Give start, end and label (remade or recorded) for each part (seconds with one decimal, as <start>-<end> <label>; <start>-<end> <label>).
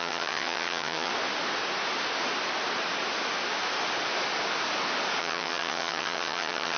0.0-1.1 remade; 1.1-5.2 recorded; 5.2-6.8 remade